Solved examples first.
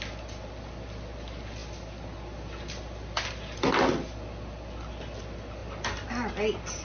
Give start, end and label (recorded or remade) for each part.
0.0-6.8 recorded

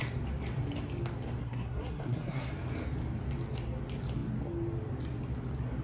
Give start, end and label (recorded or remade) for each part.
0.0-1.4 recorded; 1.4-2.5 remade; 2.5-5.8 recorded

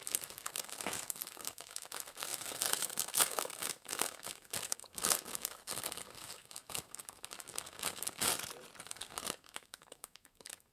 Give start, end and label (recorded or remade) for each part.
0.0-8.3 remade; 8.3-8.8 recorded; 8.8-10.7 remade

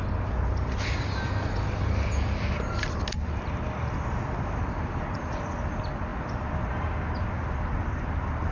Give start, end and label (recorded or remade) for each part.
0.0-8.5 recorded

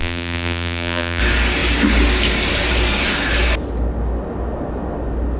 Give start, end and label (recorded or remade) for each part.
0.0-1.2 remade; 1.2-5.4 recorded